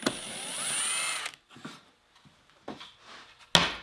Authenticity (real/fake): real